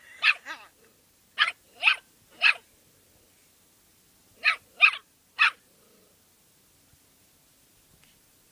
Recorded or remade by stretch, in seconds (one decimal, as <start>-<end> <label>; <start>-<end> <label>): 0.0-8.5 recorded